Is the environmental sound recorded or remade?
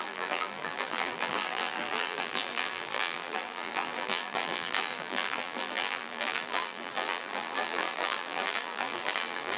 remade